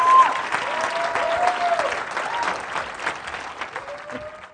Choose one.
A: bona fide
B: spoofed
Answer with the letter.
A